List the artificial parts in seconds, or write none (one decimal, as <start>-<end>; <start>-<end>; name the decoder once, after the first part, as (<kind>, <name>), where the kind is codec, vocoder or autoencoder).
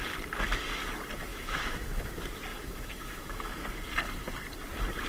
1.3-2.0 (autoencoder, DAC-VAE); 2.5-3.8